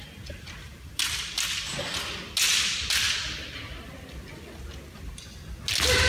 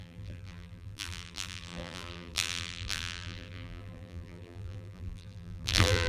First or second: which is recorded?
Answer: first